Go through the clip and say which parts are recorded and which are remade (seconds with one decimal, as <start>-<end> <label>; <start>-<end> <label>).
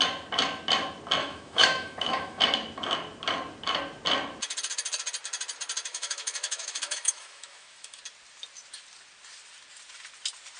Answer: 0.0-1.2 recorded; 1.2-2.4 remade; 2.4-5.9 recorded; 5.9-8.0 remade; 8.0-10.6 recorded